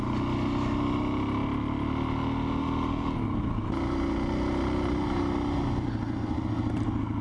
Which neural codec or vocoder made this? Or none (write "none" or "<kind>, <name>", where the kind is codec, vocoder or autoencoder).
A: none